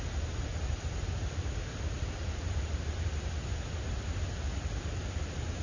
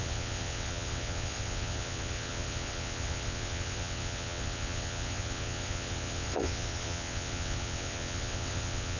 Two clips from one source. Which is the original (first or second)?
first